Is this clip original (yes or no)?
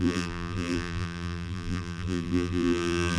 no